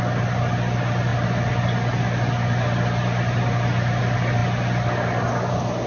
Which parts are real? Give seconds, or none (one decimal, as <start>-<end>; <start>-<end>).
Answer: 0.0-5.9